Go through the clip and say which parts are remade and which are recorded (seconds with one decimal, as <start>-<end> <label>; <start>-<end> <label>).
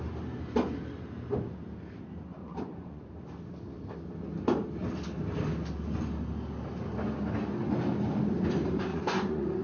0.0-2.4 recorded; 2.4-3.1 remade; 3.1-8.9 recorded; 8.9-9.6 remade